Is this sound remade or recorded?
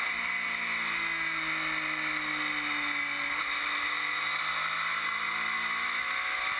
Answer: recorded